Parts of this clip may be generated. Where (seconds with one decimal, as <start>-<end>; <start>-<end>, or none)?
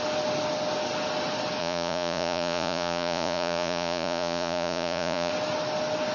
1.6-5.3